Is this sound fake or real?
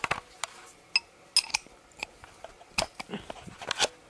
real